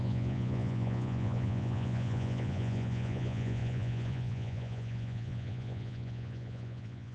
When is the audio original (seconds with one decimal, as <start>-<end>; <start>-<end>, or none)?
none